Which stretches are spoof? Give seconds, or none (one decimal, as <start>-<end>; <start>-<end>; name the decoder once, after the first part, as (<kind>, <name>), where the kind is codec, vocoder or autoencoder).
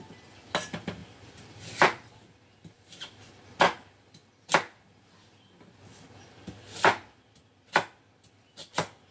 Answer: 1.0-3.2 (vocoder, BigVGAN v2)